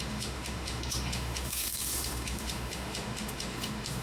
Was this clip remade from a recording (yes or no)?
yes